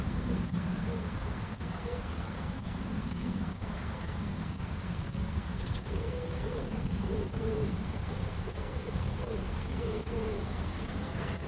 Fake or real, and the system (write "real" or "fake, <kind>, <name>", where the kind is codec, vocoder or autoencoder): fake, codec, SNAC